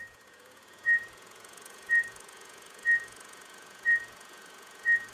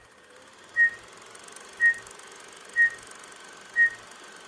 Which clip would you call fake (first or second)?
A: first